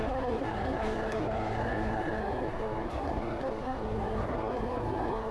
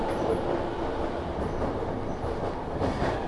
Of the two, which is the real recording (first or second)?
second